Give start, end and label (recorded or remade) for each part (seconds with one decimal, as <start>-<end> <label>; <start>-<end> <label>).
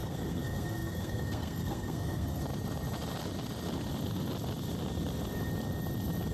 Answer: 0.0-2.4 remade; 2.4-6.3 recorded